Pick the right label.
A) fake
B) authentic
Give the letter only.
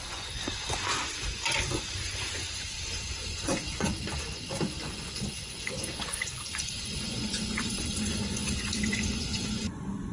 A